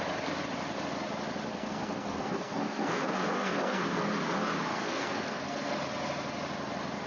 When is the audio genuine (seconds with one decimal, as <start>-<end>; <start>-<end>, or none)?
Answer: 0.0-1.5; 4.1-4.7; 5.8-7.1